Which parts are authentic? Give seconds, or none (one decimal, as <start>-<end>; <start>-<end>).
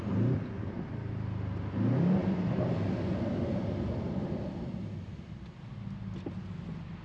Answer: 0.0-7.0